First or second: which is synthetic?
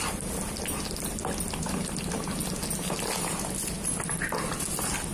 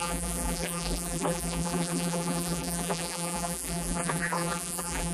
second